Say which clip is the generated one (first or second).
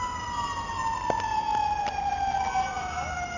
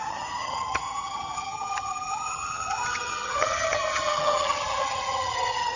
second